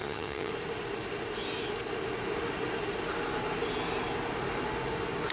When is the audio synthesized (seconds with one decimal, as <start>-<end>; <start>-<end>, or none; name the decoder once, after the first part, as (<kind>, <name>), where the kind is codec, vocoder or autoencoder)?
0.0-0.5 (vocoder, HiFi-GAN)